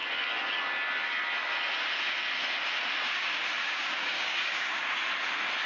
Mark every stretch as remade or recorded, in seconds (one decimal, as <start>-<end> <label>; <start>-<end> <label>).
0.0-3.1 recorded; 3.1-5.0 remade; 5.0-5.7 recorded